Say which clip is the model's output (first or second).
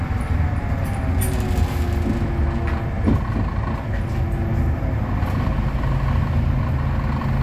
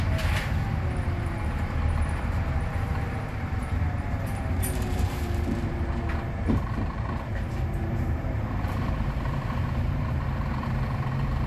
second